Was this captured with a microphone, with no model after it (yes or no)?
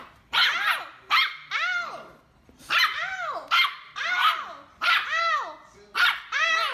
yes